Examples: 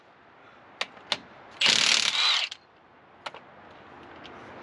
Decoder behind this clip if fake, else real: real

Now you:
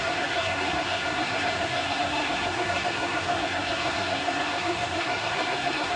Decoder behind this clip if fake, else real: fake, codec, SNAC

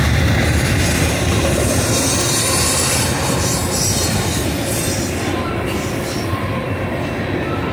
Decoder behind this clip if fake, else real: real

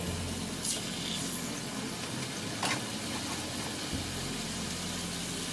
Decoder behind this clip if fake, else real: real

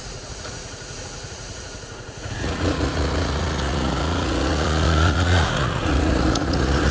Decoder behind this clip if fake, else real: fake, vocoder, Vocos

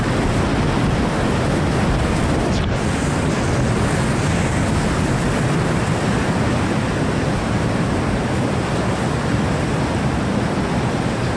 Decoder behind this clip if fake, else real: real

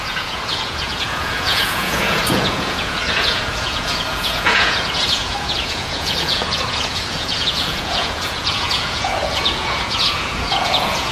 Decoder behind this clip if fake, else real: fake, vocoder, Vocos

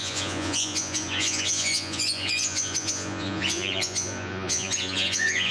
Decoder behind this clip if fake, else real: fake, vocoder, Vocos